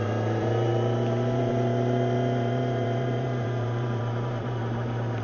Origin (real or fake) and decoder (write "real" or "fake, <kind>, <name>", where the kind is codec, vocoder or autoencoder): fake, vocoder, BigVGAN v2